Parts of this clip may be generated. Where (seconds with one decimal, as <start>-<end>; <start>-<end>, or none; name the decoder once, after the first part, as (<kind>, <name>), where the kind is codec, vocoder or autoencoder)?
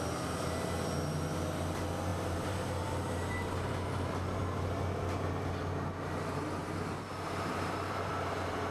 2.1-3.3 (vocoder, BigVGAN v2); 6.6-8.1